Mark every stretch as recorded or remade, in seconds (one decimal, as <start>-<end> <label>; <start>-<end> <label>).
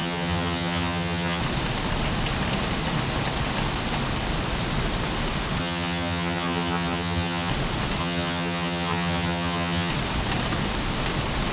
0.0-1.4 remade; 1.4-5.6 recorded; 5.6-7.5 remade; 7.5-8.0 recorded; 8.0-9.9 remade; 9.9-11.5 recorded